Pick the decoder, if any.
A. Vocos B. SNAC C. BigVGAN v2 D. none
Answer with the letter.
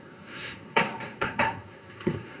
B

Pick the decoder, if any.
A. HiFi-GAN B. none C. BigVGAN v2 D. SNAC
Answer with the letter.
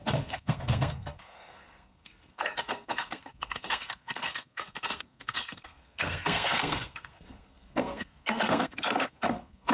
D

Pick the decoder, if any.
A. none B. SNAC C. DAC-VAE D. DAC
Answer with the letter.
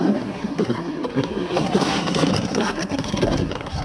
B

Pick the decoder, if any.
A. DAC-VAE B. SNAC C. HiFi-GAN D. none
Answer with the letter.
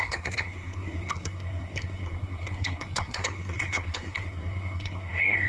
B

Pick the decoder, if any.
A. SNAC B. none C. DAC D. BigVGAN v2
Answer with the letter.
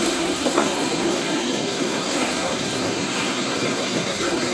A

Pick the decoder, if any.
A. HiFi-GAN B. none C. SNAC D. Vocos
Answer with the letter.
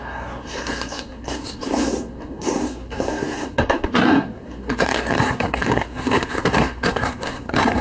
C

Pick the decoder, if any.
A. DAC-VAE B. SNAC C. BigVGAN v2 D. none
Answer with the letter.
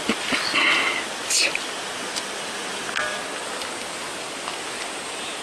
D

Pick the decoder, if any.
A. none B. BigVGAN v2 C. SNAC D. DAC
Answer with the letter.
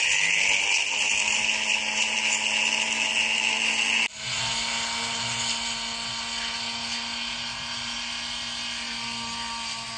A